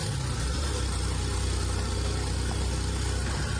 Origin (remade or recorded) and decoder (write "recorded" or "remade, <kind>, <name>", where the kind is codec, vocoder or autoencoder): recorded